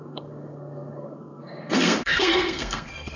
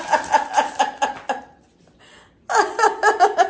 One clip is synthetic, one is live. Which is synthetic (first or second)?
first